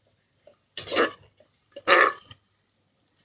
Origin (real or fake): real